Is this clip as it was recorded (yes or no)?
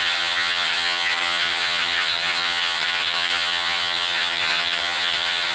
no